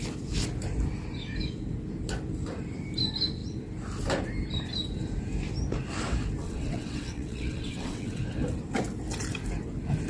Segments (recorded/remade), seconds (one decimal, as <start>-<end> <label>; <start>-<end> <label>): 0.0-6.4 recorded; 6.4-8.2 remade; 8.2-10.1 recorded